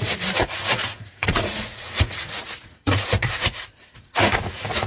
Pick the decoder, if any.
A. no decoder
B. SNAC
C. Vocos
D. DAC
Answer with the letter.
C